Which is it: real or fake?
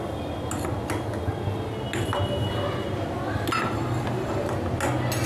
real